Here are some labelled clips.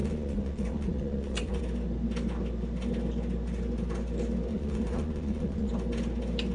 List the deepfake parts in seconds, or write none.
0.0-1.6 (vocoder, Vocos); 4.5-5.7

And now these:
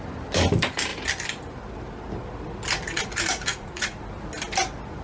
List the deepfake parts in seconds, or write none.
3.5-4.0 (vocoder, Vocos)

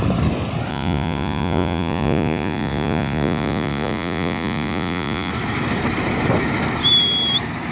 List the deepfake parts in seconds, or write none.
0.7-5.3 (vocoder, Vocos)

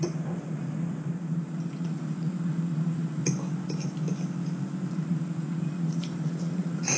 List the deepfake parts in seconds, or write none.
0.0-3.2 (vocoder, Vocos); 4.9-7.0

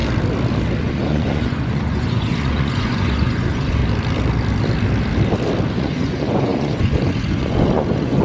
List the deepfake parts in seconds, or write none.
0.8-3.8 (vocoder, Vocos); 5.7-8.2